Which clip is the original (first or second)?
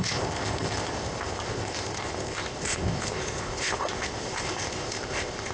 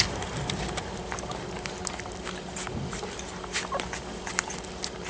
second